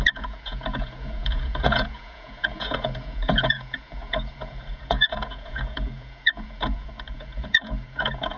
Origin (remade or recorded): remade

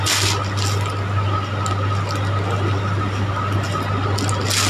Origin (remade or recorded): recorded